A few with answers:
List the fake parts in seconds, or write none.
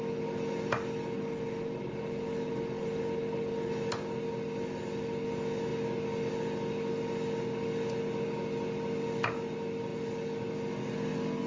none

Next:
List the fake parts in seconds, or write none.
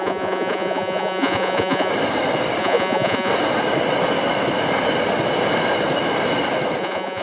0.0-1.9; 2.6-3.3; 6.8-7.2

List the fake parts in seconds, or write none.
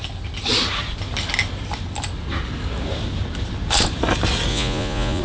4.5-5.2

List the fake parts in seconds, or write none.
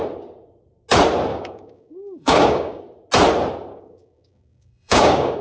1.3-2.8; 3.7-5.4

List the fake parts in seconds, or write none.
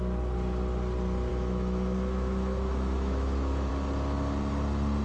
1.3-3.7